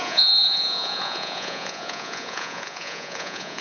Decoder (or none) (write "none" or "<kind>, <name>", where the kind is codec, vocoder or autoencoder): vocoder, Vocos